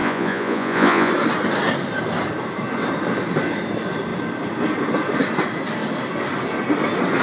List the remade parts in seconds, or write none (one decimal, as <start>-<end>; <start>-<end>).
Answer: 0.0-1.1